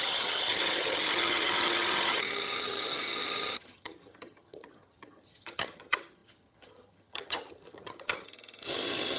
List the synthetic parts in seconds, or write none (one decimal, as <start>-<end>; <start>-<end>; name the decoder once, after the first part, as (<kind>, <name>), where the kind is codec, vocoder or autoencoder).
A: 0.0-9.2 (vocoder, HiFi-GAN)